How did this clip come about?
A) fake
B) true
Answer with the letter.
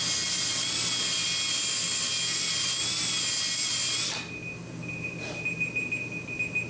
B